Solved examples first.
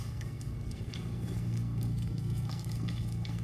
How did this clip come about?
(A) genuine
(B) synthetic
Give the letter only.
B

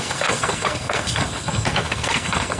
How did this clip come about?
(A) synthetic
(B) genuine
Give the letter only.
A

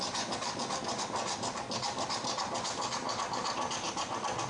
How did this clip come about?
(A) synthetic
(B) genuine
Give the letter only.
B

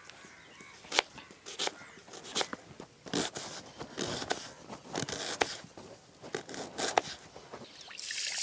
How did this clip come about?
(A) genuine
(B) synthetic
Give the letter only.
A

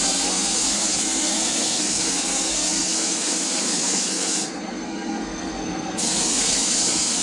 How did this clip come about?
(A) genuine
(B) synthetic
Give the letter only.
B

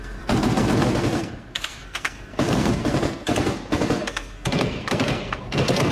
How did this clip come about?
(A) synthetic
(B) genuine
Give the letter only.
A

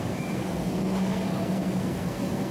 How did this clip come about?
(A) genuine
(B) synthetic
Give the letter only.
B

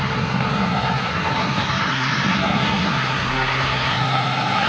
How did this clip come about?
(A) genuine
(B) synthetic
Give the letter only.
B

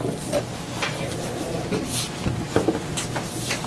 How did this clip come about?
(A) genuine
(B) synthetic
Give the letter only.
A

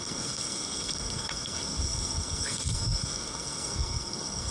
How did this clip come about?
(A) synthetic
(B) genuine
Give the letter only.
A